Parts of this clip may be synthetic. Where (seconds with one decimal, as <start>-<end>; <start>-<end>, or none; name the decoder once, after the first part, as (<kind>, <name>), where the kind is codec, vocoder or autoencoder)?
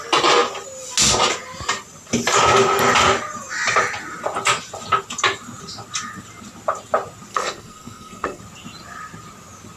7.3-8.4 (codec, SNAC)